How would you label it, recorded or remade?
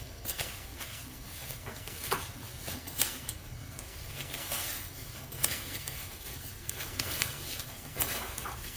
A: remade